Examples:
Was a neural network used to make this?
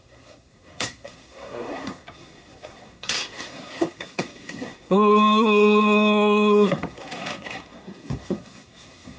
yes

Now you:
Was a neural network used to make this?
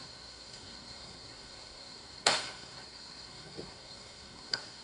yes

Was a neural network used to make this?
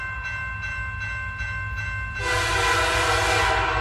no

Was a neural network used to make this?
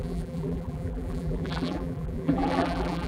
yes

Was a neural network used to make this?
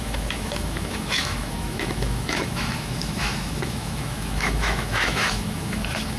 yes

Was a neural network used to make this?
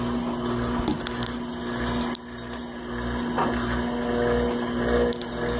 no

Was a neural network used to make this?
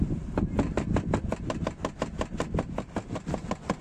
no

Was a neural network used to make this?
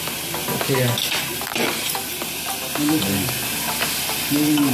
no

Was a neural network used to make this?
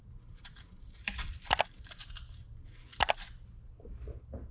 no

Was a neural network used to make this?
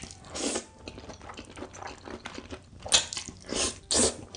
no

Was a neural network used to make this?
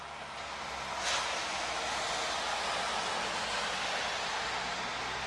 no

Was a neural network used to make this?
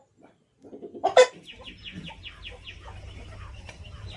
no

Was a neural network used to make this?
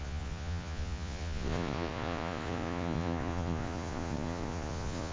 yes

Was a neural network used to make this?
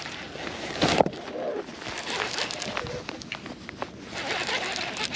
no